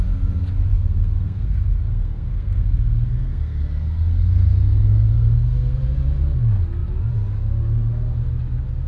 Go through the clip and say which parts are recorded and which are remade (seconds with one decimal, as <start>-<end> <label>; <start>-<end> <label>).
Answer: 0.0-0.7 recorded; 0.7-5.8 remade; 5.8-8.9 recorded